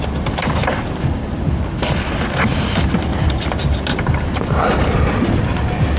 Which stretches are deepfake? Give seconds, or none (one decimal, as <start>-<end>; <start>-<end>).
none